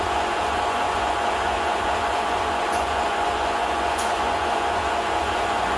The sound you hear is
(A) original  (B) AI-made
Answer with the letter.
B